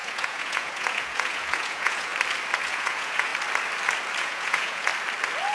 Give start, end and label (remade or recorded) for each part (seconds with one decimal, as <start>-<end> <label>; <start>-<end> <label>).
0.0-2.1 remade; 2.1-2.6 recorded; 2.6-3.3 remade; 3.3-4.2 recorded; 4.2-4.9 remade; 4.9-5.5 recorded

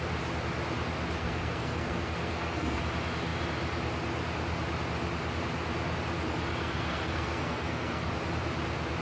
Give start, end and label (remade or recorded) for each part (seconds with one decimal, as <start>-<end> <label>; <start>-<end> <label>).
0.0-1.2 recorded; 1.2-2.8 remade; 2.8-6.6 recorded; 6.6-8.1 remade; 8.1-9.0 recorded